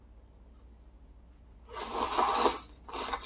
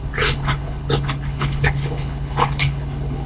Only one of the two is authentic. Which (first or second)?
first